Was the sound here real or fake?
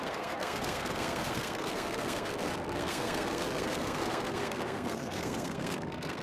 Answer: fake